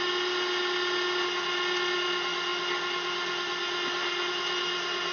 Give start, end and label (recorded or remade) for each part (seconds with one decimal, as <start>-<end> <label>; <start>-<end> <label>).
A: 0.0-5.1 recorded